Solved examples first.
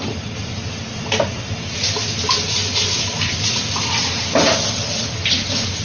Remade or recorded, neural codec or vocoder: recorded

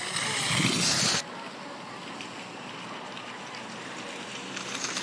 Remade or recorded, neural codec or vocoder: recorded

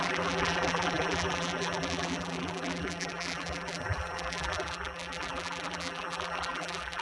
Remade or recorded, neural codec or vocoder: remade, vocoder, BigVGAN v2